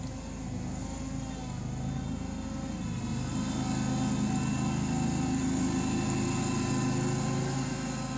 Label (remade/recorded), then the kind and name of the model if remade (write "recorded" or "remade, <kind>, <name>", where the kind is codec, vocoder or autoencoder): recorded